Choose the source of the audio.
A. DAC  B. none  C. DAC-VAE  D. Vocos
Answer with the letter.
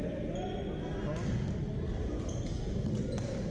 B